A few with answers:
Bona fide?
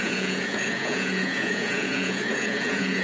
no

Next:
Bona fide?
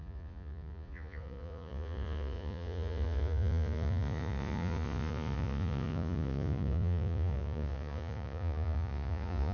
no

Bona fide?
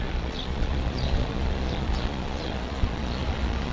no